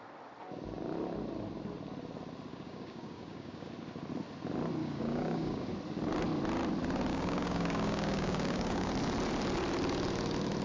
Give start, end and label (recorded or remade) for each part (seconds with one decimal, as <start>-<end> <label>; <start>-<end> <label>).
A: 0.0-2.5 recorded; 2.5-3.7 remade; 3.7-4.8 recorded; 4.8-5.7 remade; 5.7-7.1 recorded; 7.1-8.9 remade; 8.9-10.6 recorded